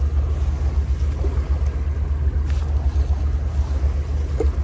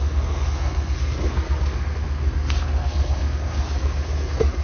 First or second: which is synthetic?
second